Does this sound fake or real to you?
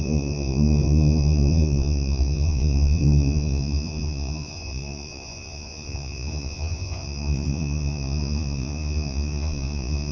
fake